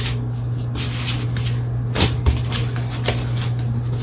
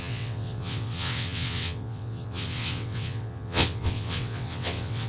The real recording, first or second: first